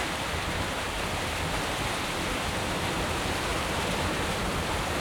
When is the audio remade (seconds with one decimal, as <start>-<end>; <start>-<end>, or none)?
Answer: 0.0-3.5; 4.3-5.0